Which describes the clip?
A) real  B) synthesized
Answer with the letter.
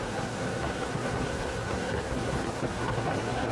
B